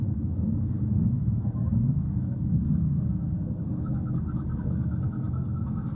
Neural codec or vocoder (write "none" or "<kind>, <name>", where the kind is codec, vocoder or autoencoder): codec, SNAC